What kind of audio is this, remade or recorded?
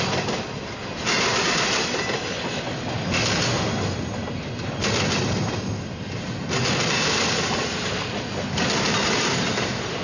recorded